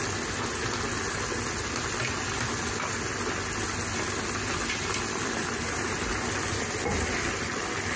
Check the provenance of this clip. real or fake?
real